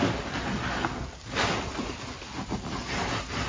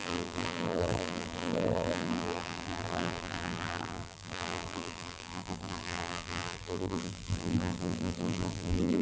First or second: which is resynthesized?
second